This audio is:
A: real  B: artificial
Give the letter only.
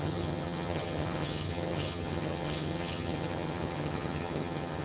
B